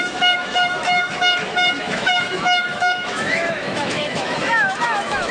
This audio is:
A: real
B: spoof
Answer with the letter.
B